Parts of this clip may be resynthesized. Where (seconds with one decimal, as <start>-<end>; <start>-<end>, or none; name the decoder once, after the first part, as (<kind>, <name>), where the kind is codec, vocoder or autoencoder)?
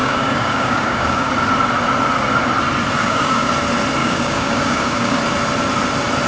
0.0-1.3 (codec, DAC); 3.0-3.5; 4.0-5.2